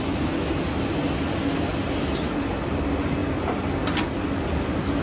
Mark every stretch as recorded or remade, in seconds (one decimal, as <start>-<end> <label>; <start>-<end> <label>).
0.0-5.0 recorded